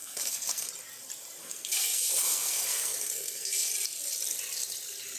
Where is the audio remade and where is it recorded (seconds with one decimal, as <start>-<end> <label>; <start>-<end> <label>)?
0.0-0.7 remade; 0.7-1.4 recorded; 1.4-3.7 remade; 3.7-5.2 recorded